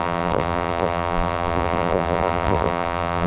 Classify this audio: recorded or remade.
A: remade